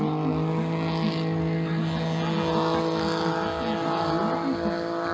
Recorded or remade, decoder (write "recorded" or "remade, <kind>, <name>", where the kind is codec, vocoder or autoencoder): recorded